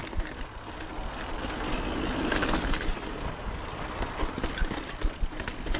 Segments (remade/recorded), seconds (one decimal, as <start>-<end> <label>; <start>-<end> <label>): 0.0-5.8 recorded